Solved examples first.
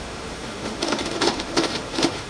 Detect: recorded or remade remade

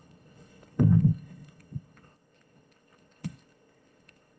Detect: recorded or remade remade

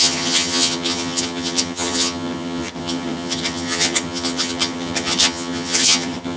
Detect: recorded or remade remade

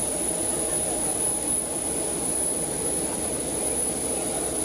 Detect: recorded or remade recorded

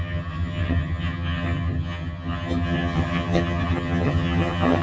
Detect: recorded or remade remade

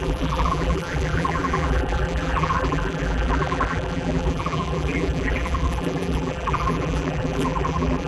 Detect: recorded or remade remade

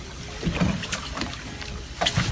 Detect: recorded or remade recorded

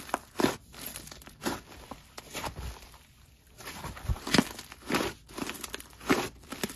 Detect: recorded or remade recorded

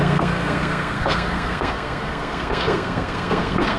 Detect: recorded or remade remade